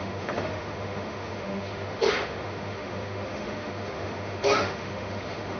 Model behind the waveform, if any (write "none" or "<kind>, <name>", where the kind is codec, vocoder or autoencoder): autoencoder, DAC-VAE